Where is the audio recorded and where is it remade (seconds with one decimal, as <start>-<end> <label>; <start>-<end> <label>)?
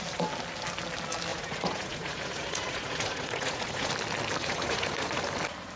0.0-1.3 recorded; 1.3-3.9 remade; 3.9-4.4 recorded; 4.4-5.2 remade; 5.2-5.8 recorded